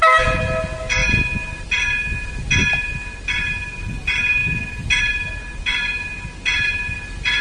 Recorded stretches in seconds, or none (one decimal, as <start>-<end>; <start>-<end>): 0.0-7.4